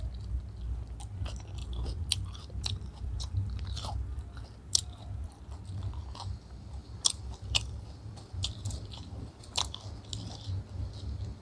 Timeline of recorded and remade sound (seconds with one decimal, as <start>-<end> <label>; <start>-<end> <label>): 0.0-1.6 recorded; 1.6-5.4 remade; 5.4-6.8 recorded; 6.8-9.9 remade; 9.9-11.4 recorded